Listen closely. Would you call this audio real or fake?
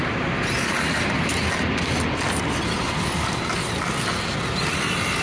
real